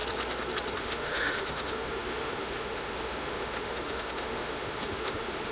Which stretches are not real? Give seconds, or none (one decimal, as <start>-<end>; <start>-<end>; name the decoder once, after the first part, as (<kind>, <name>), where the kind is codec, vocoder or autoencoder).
0.8-5.5 (autoencoder, DAC-VAE)

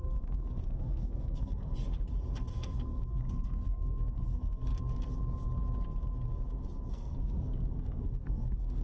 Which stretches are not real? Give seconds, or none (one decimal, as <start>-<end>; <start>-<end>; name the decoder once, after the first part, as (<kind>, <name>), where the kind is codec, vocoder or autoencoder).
0.0-1.7 (codec, SNAC); 2.5-4.7; 6.9-8.8

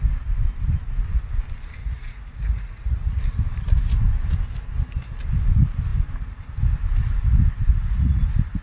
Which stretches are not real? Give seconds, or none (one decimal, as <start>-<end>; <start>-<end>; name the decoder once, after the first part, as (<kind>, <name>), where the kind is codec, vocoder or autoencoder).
1.8-3.2 (vocoder, Vocos); 7.7-8.2

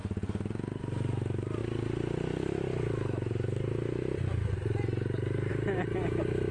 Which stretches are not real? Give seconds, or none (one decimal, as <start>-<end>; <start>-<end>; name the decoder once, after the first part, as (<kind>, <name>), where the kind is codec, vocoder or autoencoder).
none

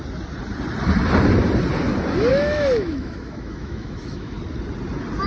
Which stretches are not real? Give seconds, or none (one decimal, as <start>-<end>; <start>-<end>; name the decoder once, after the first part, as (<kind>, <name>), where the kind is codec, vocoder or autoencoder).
2.3-4.4 (autoencoder, DAC-VAE)

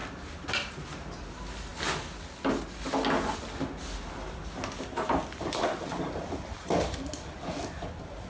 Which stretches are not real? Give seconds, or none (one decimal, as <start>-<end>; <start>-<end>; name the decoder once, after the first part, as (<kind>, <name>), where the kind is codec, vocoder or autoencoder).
none